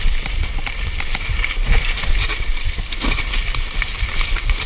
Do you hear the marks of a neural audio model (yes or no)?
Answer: yes